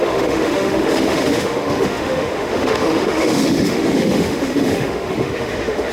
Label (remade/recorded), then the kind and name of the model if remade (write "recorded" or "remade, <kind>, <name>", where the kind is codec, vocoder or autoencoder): remade, autoencoder, DAC-VAE